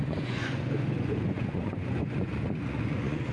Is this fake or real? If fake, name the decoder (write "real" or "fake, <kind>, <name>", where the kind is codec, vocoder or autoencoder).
fake, vocoder, Vocos